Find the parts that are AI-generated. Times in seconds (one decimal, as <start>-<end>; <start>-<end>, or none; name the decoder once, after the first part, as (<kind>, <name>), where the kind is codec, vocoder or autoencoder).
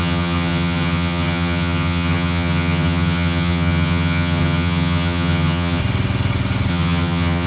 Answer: 0.0-5.8 (vocoder, HiFi-GAN); 6.7-7.5